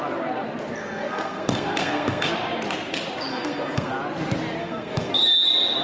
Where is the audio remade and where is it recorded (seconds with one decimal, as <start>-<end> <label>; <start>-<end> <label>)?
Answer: 0.0-0.8 recorded; 0.8-2.3 remade; 2.3-3.3 recorded; 3.3-3.9 remade; 3.9-4.6 recorded; 4.6-5.1 remade; 5.1-5.8 recorded